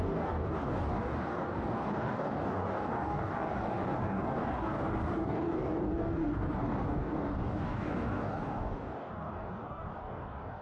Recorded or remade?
remade